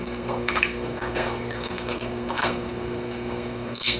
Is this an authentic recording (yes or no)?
no